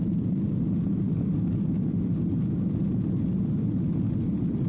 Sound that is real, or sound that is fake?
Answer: real